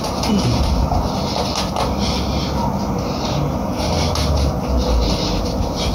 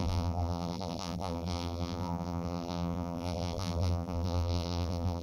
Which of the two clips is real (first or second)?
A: first